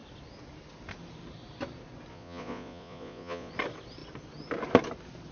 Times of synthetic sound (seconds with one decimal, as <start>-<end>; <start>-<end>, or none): 2.1-3.5